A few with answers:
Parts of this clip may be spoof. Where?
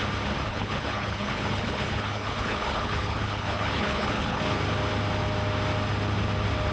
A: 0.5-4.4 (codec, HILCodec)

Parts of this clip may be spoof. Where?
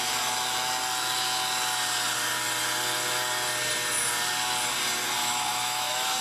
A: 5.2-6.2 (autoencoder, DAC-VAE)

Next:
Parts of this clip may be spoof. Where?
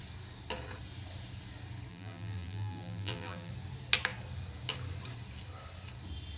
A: 1.9-3.5 (vocoder, BigVGAN v2)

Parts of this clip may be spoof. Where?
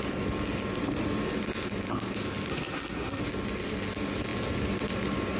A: 2.5-3.2 (codec, SNAC)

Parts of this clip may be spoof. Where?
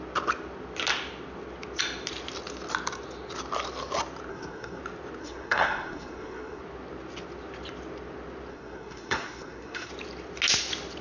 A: 4.3-4.8 (codec, SNAC); 5.2-6.6; 8.5-9.9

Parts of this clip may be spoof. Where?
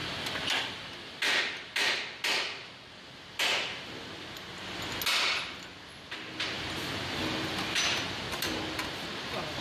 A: none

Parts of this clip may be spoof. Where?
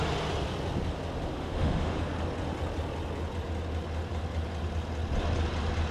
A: 1.3-2.0 (autoencoder, DAC-VAE)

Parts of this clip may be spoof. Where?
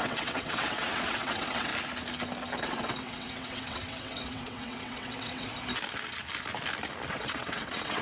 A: 0.0-1.7 (vocoder, WaveNeXt); 2.6-5.5; 7.1-8.0